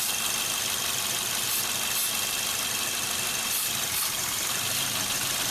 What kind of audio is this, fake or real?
real